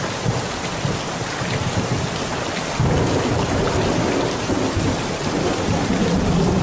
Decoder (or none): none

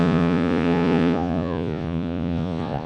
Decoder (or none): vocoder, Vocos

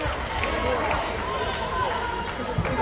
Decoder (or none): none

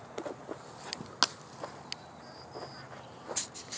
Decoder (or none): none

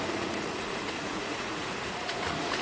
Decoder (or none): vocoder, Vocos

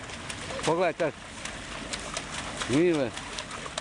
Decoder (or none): none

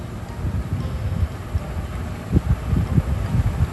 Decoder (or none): none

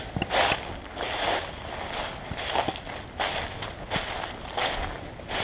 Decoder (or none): none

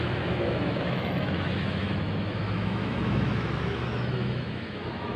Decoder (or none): autoencoder, DAC-VAE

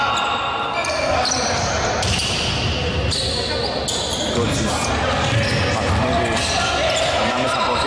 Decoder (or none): none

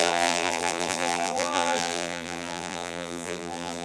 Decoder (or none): vocoder, BigVGAN v2